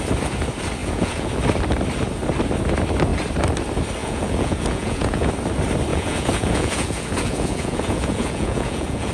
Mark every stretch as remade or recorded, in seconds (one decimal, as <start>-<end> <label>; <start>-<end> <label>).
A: 0.0-0.8 recorded; 0.8-1.4 remade; 1.4-4.0 recorded; 4.0-5.3 remade; 5.3-5.9 recorded; 5.9-9.1 remade